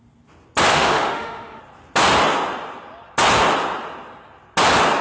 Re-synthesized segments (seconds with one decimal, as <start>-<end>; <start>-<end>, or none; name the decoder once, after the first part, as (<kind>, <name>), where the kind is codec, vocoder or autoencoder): 0.7-1.6 (autoencoder, DAC-VAE)